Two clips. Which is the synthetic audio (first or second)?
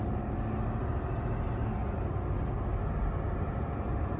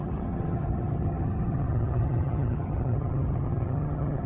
second